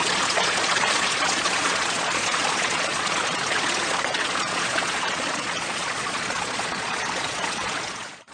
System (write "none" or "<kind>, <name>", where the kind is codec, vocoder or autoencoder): vocoder, Vocos